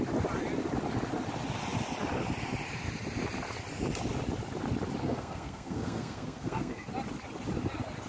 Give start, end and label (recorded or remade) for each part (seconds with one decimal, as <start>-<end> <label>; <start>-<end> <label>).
0.0-5.0 recorded; 5.0-6.9 remade; 6.9-8.1 recorded